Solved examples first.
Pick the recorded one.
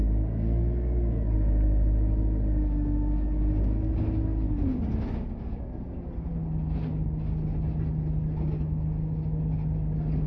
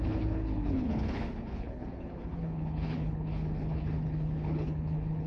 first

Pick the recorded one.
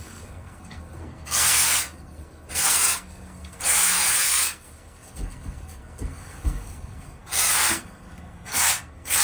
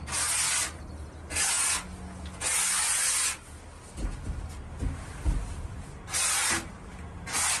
second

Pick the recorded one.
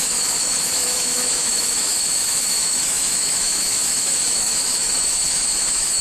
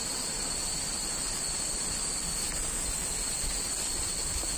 second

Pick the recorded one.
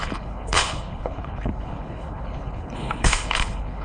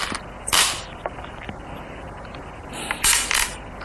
second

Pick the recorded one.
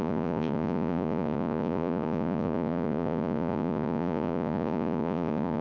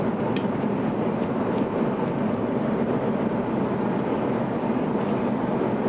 second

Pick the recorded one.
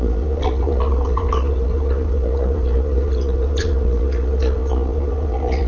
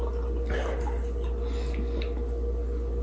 second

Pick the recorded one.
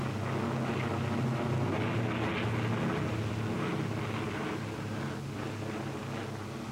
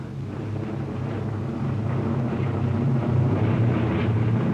first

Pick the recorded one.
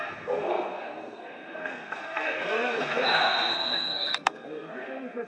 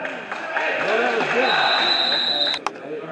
second